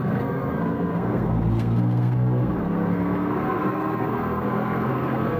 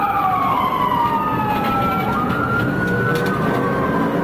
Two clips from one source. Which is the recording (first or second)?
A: second